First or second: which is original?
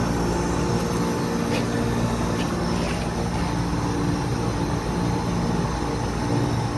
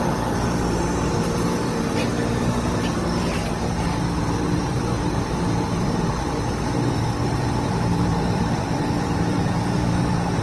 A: first